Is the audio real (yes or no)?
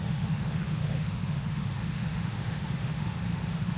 no